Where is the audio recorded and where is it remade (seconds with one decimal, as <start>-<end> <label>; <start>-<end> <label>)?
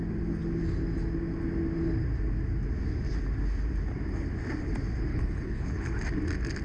0.0-5.1 recorded; 5.1-5.9 remade; 5.9-6.6 recorded